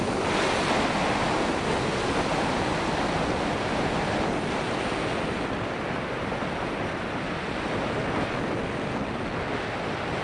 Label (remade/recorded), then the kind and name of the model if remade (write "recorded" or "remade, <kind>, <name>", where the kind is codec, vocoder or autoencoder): recorded